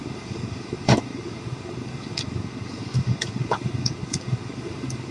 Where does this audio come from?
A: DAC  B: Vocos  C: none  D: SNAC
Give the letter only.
A